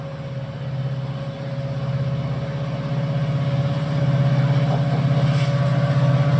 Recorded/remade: recorded